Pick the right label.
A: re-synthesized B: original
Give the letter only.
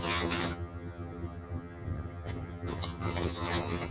A